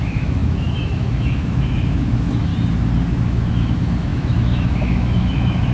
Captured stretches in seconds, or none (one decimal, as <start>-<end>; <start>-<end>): 2.5-3.1